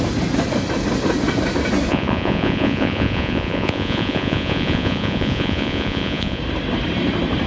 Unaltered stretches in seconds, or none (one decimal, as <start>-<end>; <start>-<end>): 0.0-1.9; 6.4-7.5